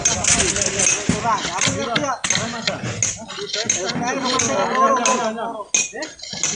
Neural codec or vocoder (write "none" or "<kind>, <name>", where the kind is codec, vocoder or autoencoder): none